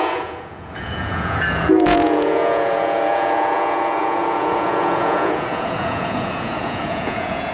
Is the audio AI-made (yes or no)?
yes